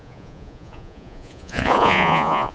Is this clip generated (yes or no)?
yes